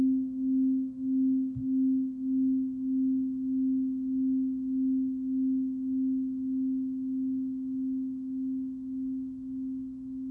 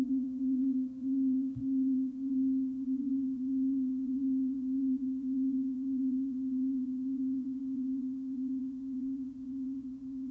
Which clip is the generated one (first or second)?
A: second